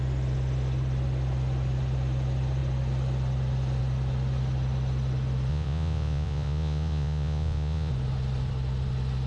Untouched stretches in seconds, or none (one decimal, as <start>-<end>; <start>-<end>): 0.0-5.5; 7.9-9.3